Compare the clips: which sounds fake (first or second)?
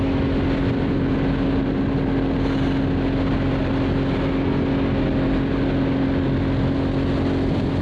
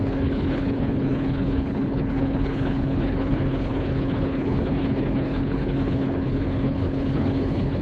second